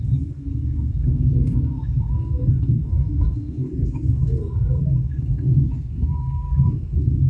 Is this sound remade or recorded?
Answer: remade